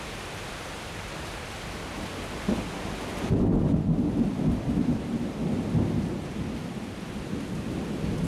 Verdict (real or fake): real